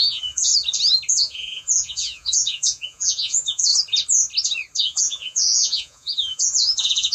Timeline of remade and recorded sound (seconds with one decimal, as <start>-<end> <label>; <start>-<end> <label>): 0.0-0.5 remade; 0.5-1.1 recorded; 1.1-3.7 remade; 3.7-4.8 recorded; 4.8-7.1 remade